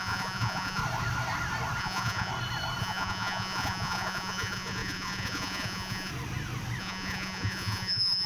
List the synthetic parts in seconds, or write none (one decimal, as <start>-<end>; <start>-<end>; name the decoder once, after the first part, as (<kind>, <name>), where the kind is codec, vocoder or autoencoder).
0.0-0.8 (vocoder, Vocos); 1.8-2.3; 2.8-6.1; 6.8-8.3